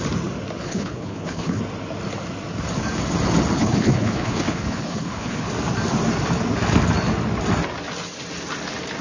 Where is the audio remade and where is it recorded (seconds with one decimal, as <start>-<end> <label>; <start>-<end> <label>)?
0.0-0.6 recorded; 0.6-1.6 remade; 1.6-3.6 recorded; 3.6-5.5 remade; 5.5-9.0 recorded